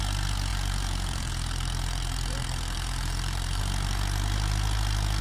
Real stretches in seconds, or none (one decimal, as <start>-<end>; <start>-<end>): 0.0-0.5; 3.6-5.2